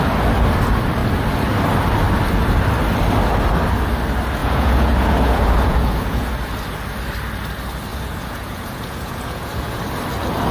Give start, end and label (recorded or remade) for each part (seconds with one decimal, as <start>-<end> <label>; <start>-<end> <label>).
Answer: 0.0-4.4 recorded; 4.4-6.3 remade; 6.3-7.9 recorded; 7.9-9.8 remade; 9.8-10.5 recorded